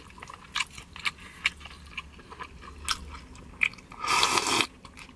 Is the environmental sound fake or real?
real